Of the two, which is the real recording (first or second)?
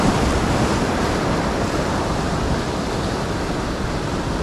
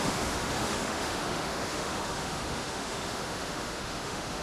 first